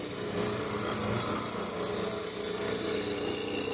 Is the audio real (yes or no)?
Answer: yes